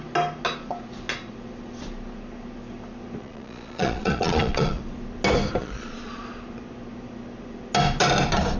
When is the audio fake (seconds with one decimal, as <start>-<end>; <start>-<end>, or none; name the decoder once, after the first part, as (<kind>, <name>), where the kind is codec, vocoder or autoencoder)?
3.2-4.8 (vocoder, Vocos); 5.6-6.2